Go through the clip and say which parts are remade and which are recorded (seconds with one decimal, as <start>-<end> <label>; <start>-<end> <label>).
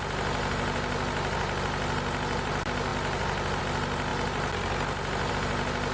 0.0-5.9 recorded